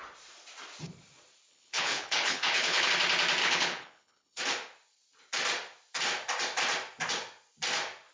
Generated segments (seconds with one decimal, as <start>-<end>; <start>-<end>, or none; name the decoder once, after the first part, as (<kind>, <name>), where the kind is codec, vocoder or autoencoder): 1.5-2.9 (codec, HILCodec); 3.4-4.4